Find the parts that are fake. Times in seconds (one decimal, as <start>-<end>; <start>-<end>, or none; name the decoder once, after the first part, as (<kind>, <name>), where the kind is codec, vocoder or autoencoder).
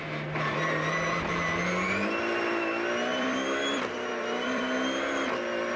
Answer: 3.1-4.6 (vocoder, BigVGAN v2)